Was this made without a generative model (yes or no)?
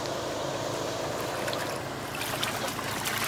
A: yes